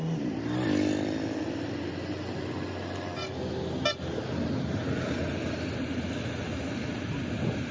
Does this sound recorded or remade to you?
recorded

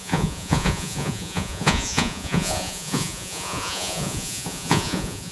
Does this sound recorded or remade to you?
remade